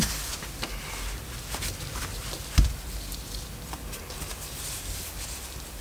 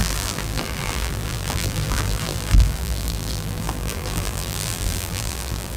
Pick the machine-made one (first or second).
second